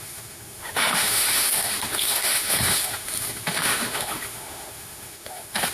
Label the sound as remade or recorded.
remade